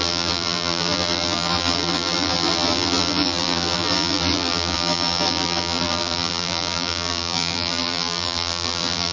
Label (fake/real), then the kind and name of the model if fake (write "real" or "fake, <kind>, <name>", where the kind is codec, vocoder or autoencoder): fake, vocoder, BigVGAN v2